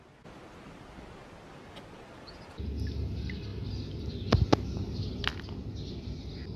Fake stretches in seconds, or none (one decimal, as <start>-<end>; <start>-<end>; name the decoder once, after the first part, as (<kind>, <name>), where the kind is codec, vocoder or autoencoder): none